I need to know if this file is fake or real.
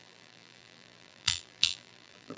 fake